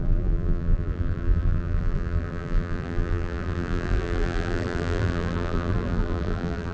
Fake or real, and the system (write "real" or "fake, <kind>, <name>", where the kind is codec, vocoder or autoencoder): fake, vocoder, BigVGAN v2